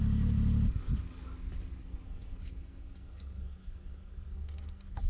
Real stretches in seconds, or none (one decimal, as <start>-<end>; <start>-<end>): 0.0-1.8